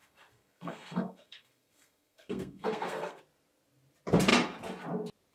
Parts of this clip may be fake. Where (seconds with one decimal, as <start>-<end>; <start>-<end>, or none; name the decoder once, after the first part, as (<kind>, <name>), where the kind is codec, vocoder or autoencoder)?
0.0-3.2 (codec, SNAC)

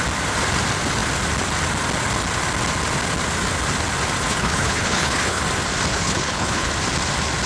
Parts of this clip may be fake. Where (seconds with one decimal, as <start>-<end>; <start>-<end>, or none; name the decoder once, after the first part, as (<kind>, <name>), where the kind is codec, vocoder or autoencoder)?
4.3-5.4 (codec, HILCodec); 5.9-6.7

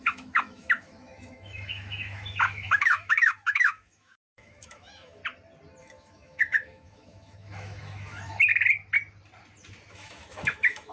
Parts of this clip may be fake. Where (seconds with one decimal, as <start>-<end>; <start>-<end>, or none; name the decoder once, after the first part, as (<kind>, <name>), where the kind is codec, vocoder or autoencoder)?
0.0-5.2 (autoencoder, DAC-VAE); 5.8-8.5; 9.9-10.9